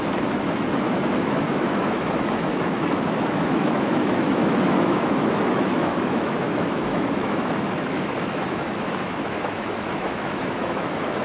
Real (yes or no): no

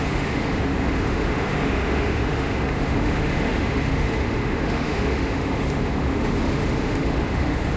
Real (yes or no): no